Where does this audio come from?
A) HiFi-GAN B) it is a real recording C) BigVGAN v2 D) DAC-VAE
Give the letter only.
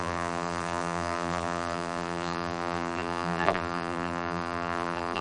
C